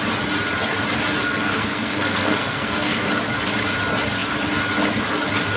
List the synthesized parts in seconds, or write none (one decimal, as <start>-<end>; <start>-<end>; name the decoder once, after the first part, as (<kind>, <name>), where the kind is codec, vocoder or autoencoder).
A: 1.2-3.1 (codec, SNAC)